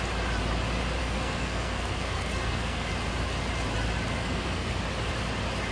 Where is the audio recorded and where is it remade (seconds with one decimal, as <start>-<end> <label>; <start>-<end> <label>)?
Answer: 0.0-1.0 recorded; 1.0-2.9 remade; 2.9-4.2 recorded; 4.2-4.8 remade; 4.8-5.7 recorded